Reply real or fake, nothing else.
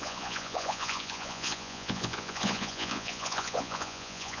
fake